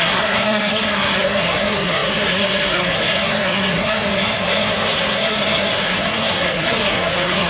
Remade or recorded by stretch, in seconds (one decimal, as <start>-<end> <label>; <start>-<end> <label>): 0.0-7.5 remade